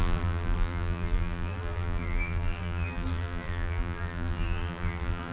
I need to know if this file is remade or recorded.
remade